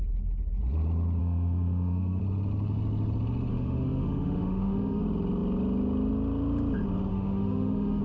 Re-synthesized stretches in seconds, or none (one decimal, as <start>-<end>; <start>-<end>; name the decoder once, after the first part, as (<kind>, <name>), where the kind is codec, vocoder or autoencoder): 1.2-2.2 (autoencoder, DAC-VAE); 3.5-5.0; 7.1-8.0